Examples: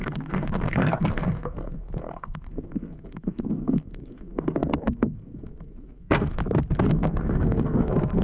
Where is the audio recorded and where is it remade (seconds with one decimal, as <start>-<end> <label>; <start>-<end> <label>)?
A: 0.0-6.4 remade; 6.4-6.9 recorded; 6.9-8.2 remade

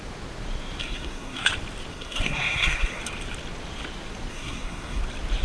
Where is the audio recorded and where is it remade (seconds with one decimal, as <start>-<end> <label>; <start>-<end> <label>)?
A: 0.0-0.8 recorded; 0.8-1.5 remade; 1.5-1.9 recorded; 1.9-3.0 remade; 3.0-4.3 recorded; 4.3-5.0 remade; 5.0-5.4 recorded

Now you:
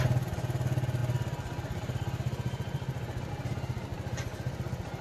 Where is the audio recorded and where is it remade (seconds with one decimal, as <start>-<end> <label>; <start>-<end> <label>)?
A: 0.0-5.0 recorded

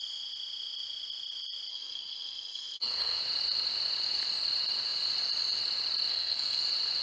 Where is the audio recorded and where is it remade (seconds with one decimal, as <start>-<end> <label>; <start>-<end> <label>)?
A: 0.0-1.7 recorded; 1.7-3.2 remade; 3.2-6.1 recorded; 6.1-6.6 remade; 6.6-7.0 recorded

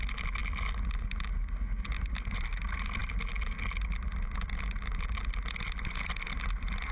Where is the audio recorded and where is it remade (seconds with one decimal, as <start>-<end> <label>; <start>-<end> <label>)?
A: 0.0-6.9 recorded

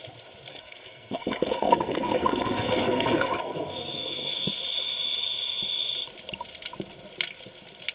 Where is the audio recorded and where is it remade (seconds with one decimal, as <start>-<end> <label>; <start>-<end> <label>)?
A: 0.0-0.5 recorded; 0.5-4.6 remade; 4.6-7.9 recorded

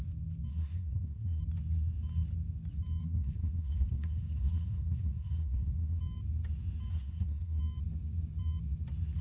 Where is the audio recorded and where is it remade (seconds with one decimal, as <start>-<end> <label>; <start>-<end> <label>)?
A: 0.0-0.5 recorded; 0.5-1.4 remade; 1.4-3.0 recorded; 3.0-6.0 remade; 6.0-6.9 recorded; 6.9-7.6 remade; 7.6-9.2 recorded